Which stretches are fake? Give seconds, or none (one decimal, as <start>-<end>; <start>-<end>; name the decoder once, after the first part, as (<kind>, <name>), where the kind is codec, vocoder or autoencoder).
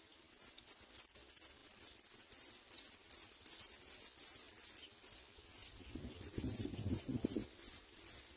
none